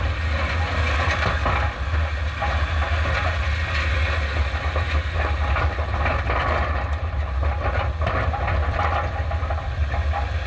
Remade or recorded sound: recorded